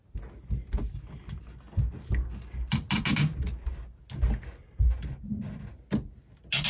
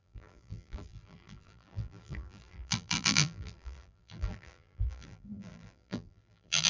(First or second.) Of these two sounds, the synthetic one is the second